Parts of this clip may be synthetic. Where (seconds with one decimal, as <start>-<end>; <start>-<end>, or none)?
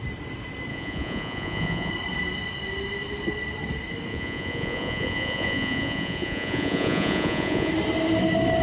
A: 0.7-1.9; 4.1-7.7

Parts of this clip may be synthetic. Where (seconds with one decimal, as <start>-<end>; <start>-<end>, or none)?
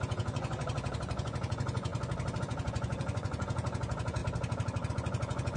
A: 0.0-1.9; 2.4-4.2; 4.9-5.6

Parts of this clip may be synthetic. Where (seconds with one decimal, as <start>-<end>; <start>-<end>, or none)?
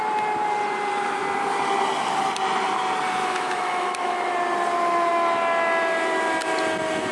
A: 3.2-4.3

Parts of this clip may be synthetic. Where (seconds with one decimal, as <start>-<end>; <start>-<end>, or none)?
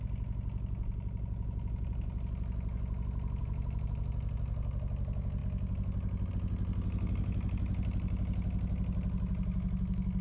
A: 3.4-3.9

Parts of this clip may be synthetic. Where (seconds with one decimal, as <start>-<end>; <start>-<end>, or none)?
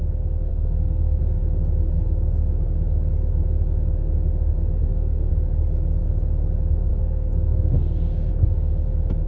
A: 0.5-1.2; 4.8-5.3; 6.9-8.3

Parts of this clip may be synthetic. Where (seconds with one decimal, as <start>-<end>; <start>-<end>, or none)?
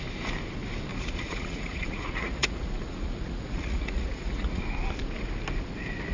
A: 0.9-4.6